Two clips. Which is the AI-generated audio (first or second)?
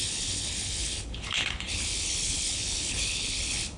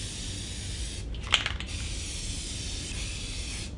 first